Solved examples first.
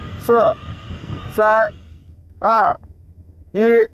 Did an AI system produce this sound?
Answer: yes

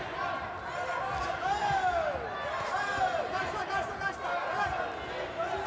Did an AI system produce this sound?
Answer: no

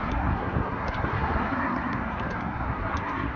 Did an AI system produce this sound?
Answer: yes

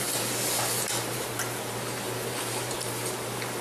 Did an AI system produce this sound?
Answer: no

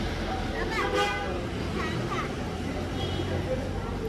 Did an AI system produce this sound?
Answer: no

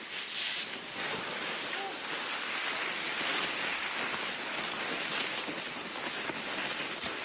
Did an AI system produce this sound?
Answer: no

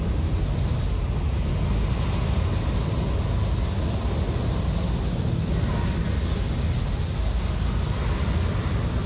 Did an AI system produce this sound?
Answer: no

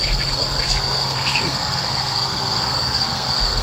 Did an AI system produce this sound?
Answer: yes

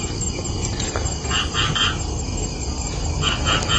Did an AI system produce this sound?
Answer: no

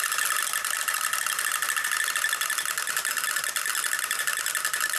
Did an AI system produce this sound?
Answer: no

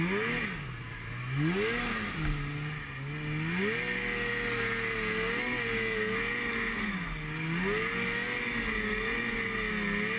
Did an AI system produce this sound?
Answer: no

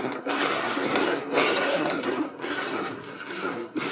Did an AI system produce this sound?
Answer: yes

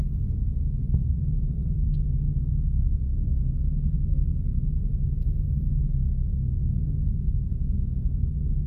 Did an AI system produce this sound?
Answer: yes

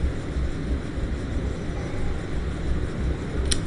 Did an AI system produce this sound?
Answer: no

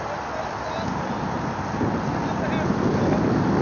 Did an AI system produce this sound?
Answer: no